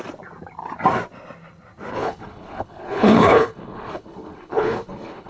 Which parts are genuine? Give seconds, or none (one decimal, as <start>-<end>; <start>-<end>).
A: 0.0-1.9